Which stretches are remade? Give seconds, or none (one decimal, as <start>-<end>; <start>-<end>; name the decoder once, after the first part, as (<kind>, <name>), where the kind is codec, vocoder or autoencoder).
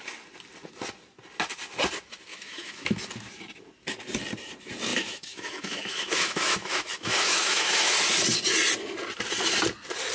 2.3-3.0 (autoencoder, DAC-VAE); 4.9-7.9